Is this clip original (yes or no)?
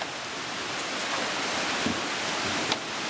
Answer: yes